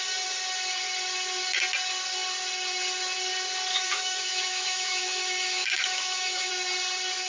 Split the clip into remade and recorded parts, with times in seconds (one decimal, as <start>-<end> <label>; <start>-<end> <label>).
0.0-3.7 recorded; 3.7-6.5 remade; 6.5-7.3 recorded